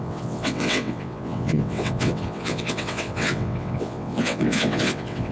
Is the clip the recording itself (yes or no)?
no